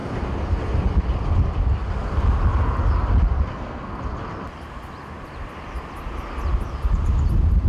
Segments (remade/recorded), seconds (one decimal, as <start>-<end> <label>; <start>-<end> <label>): 0.0-3.5 recorded; 3.5-4.0 remade; 4.0-7.7 recorded